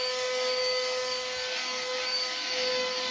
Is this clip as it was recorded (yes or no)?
no